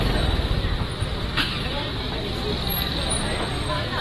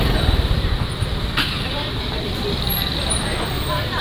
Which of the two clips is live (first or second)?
first